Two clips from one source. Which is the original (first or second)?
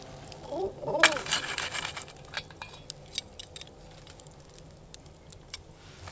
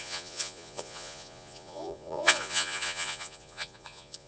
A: first